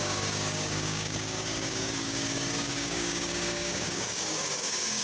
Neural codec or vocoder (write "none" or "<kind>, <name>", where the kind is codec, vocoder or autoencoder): codec, DAC